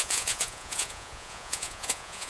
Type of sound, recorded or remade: remade